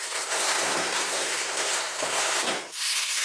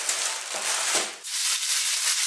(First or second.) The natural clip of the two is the second